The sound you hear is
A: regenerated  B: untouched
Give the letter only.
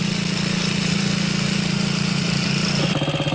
B